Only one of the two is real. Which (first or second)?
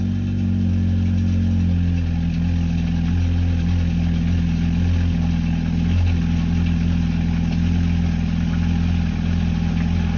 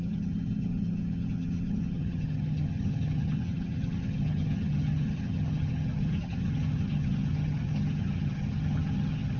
first